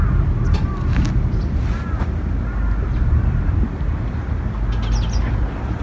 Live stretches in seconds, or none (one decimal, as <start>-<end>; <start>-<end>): 0.0-5.8